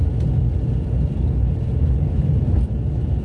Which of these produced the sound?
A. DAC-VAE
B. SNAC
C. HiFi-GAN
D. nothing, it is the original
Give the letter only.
D